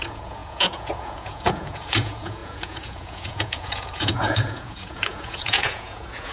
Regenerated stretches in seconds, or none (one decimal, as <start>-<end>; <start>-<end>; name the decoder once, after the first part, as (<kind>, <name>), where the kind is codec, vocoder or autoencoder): 0.0-6.3 (vocoder, Vocos)